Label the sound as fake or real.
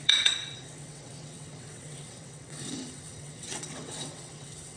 fake